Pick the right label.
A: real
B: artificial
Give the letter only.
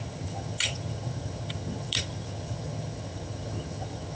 B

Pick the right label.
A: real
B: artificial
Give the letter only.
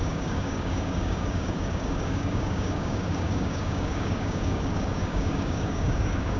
B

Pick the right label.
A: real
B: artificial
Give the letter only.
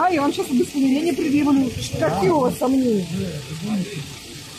A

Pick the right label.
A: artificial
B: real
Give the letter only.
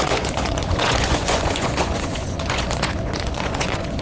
A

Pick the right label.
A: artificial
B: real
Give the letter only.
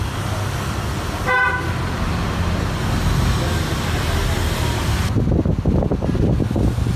B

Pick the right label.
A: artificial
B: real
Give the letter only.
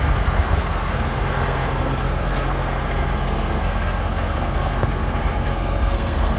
A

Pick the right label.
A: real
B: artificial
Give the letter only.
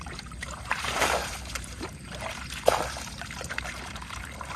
B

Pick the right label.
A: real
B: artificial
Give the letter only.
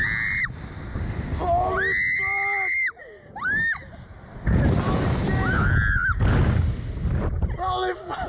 A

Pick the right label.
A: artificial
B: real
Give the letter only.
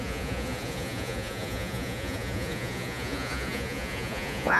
A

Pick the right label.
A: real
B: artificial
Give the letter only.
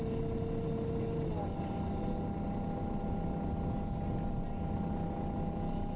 A